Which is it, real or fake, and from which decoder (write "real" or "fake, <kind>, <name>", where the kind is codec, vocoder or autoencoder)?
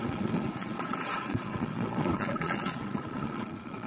fake, vocoder, Vocos